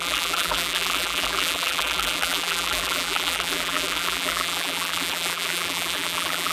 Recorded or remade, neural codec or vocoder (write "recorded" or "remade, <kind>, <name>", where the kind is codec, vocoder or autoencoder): remade, vocoder, BigVGAN v2